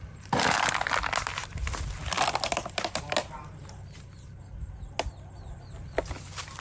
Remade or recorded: recorded